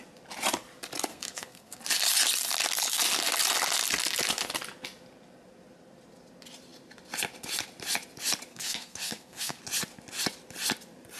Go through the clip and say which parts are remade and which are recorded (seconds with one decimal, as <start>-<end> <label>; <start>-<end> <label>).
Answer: 0.0-1.1 recorded; 1.1-1.8 remade; 1.8-8.5 recorded; 8.5-9.6 remade; 9.6-11.2 recorded